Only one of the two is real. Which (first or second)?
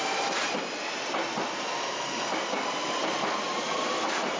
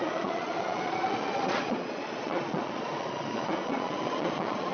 first